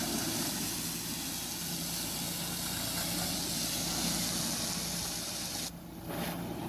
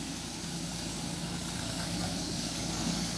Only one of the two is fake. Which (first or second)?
second